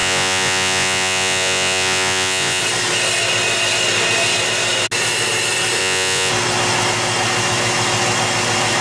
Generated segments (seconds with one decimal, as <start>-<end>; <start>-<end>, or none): 0.0-2.6; 5.8-6.3